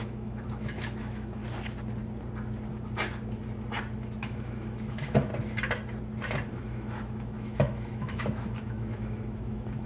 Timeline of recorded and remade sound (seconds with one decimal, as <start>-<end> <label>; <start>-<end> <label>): 0.0-1.4 remade; 1.4-4.2 recorded; 4.2-5.3 remade; 5.3-6.5 recorded; 6.5-9.9 remade